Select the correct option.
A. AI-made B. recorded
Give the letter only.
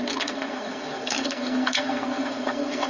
A